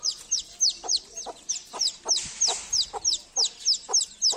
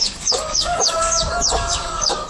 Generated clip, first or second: second